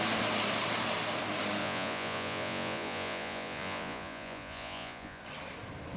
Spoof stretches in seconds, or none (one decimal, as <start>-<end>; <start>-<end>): 1.6-5.2